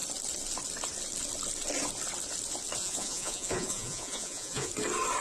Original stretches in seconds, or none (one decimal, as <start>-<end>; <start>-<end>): 0.0-2.8; 4.7-5.2